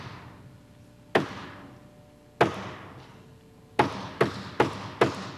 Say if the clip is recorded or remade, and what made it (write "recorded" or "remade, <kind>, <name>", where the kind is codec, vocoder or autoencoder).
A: recorded